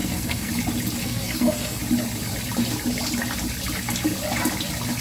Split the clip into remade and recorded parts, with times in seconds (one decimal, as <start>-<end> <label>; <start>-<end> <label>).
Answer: 0.0-0.5 remade; 0.5-1.0 recorded; 1.0-1.8 remade; 1.8-5.0 recorded